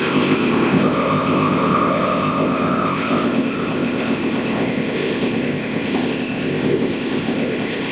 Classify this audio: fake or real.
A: fake